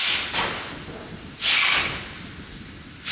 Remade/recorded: recorded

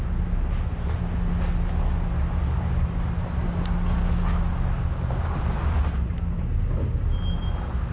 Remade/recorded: recorded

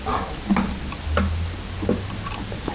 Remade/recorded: recorded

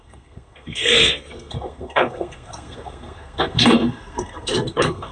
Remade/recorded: remade